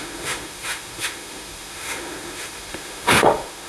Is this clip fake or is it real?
fake